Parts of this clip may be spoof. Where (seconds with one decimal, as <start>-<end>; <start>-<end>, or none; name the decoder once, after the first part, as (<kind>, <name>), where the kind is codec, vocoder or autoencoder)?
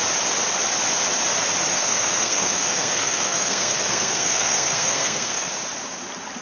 1.7-5.5 (codec, SNAC)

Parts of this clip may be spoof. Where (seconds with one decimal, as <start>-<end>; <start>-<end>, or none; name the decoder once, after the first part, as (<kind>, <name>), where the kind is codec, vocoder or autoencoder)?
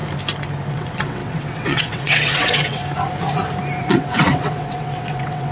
0.7-2.8 (vocoder, WaveNeXt); 3.8-5.5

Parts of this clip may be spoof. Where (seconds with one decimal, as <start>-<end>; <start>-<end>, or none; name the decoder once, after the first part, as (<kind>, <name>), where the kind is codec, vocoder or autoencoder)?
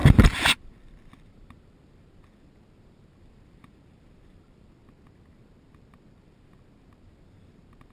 0.0-4.7 (vocoder, BigVGAN v2)